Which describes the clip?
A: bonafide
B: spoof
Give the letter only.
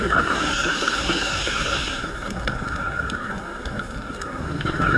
B